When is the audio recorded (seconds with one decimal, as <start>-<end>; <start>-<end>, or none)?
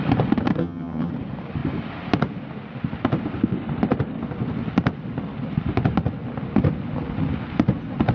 0.0-0.6; 1.1-8.1